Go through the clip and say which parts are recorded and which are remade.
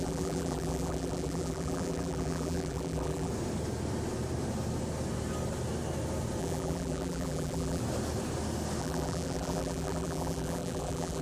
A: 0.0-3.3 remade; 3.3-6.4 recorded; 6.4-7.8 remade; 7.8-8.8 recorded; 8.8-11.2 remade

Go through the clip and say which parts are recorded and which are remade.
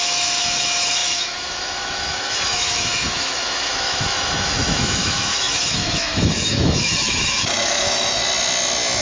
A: 0.0-8.2 remade; 8.2-9.0 recorded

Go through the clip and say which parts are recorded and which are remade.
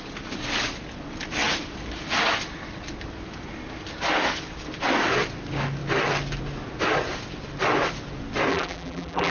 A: 0.0-8.5 recorded; 8.5-9.3 remade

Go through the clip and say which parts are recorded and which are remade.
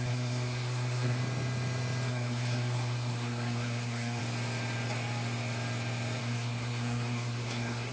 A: 0.0-1.2 remade; 1.2-2.1 recorded; 2.1-4.2 remade; 4.2-6.2 recorded; 6.2-7.9 remade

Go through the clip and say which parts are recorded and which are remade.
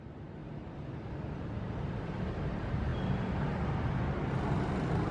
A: 0.0-5.1 recorded